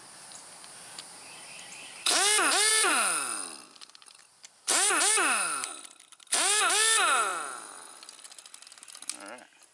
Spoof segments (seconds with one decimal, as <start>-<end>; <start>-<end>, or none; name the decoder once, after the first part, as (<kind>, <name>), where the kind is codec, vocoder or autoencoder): 2.7-4.2 (vocoder, BigVGAN v2)